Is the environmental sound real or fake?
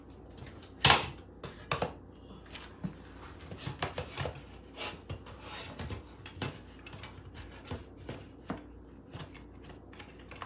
real